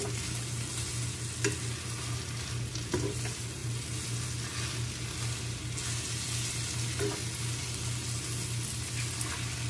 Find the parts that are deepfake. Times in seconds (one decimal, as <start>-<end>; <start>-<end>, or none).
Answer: none